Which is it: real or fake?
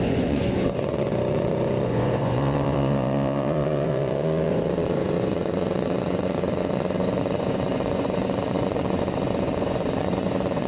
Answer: fake